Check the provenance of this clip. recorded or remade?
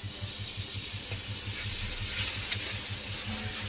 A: recorded